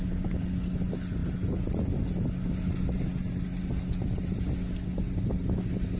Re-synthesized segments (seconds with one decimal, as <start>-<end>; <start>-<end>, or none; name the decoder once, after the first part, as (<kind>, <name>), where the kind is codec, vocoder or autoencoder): none